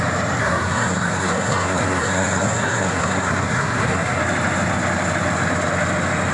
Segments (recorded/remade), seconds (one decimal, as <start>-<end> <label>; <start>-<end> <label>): 0.0-0.4 recorded; 0.4-4.2 remade; 4.2-6.3 recorded